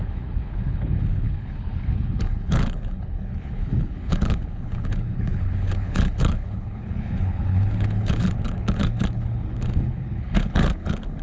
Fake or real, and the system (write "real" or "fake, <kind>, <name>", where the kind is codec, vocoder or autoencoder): fake, codec, HILCodec